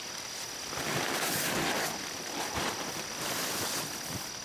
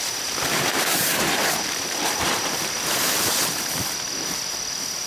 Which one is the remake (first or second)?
second